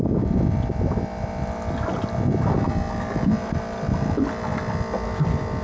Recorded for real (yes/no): yes